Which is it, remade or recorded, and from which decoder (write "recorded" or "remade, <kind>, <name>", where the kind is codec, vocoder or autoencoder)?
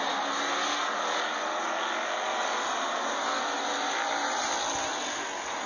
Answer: recorded